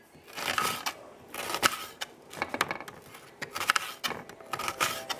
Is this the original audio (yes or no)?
yes